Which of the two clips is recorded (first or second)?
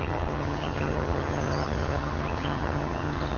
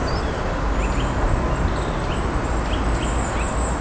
second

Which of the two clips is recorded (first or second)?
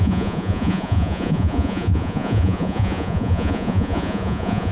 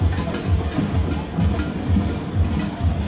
second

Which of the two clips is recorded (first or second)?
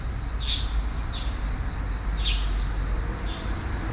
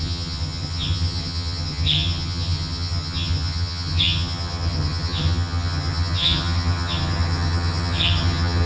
first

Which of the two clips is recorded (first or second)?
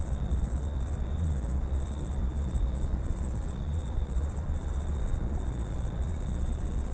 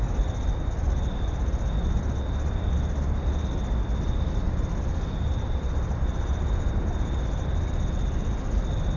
second